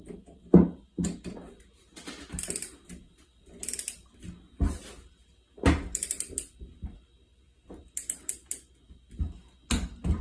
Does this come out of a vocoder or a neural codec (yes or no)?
no